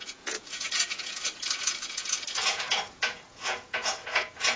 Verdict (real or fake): fake